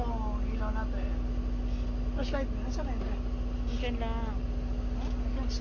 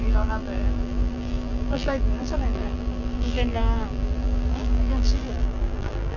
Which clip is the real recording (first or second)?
first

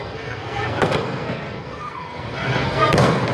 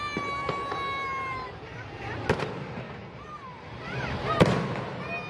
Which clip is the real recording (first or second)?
second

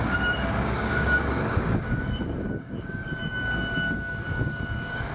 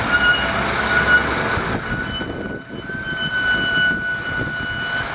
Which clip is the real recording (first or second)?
second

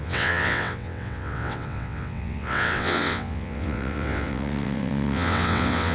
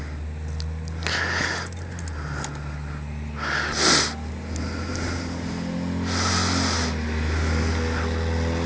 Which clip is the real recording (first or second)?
second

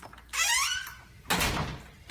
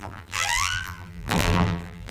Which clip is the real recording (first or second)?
first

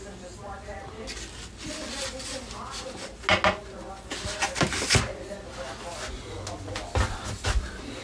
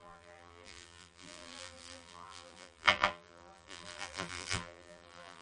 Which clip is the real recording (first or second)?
first